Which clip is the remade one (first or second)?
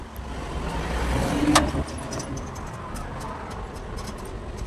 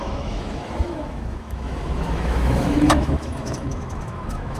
second